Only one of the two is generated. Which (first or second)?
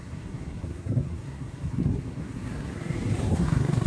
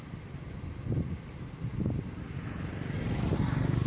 first